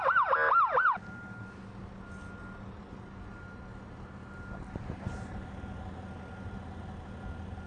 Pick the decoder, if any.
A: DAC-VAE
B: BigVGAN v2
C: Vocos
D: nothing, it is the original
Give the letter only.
D